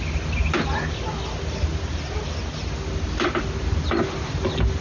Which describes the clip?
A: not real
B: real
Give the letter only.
B